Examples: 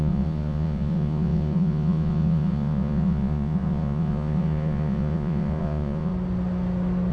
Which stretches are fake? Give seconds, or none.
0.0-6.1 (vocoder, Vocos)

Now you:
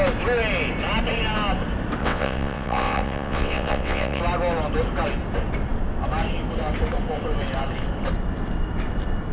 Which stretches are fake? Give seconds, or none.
2.0-4.2 (vocoder, WaveNeXt)

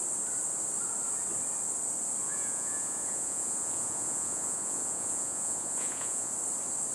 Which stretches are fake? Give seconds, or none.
2.2-6.3 (vocoder, Vocos)

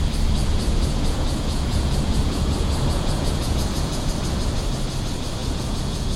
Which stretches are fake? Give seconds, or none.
0.4-4.1 (vocoder, Vocos); 5.4-6.2

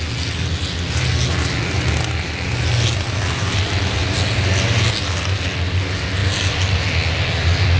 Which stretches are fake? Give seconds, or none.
none

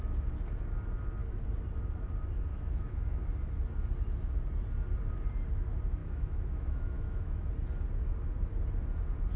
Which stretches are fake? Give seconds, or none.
2.5-3.3 (autoencoder, DAC-VAE); 6.0-7.5